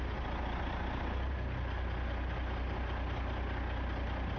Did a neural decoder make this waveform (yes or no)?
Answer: no